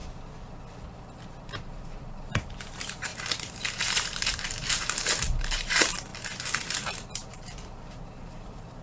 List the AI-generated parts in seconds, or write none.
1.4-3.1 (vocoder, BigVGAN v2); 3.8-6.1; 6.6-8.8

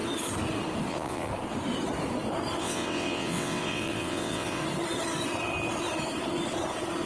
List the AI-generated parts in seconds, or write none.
0.9-1.3 (vocoder, WaveNeXt); 2.6-4.6